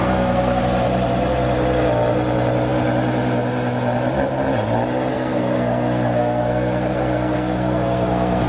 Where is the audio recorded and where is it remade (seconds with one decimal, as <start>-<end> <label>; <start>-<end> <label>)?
0.0-0.6 remade; 0.6-5.1 recorded; 5.1-8.5 remade